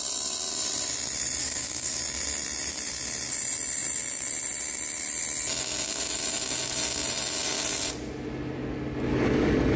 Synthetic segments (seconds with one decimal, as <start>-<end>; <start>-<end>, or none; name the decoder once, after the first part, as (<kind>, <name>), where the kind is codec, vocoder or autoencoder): 1.4-2.0 (codec, DAC); 9.1-9.8